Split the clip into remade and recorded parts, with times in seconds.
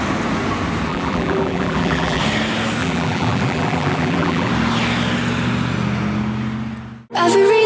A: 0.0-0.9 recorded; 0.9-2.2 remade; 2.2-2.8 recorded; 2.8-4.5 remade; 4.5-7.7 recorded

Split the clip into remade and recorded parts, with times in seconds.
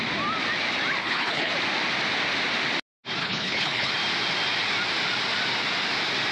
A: 0.0-1.0 recorded; 1.0-1.5 remade; 1.5-3.2 recorded; 3.2-3.9 remade; 3.9-6.3 recorded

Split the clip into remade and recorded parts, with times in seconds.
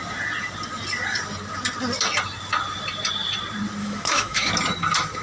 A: 0.0-3.8 recorded; 3.8-4.5 remade; 4.5-5.2 recorded